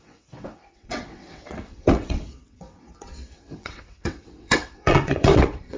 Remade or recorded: remade